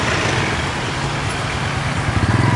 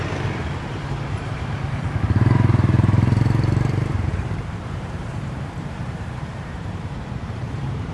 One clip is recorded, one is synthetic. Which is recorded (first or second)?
first